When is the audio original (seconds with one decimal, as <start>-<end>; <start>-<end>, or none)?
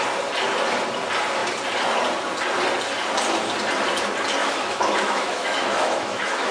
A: 0.0-4.4